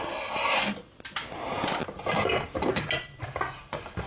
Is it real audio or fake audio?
real